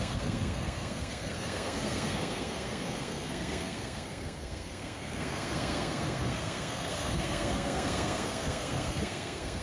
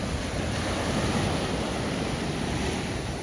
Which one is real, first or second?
second